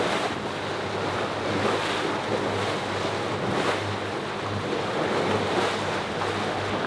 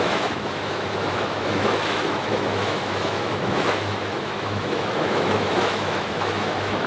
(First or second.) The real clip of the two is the first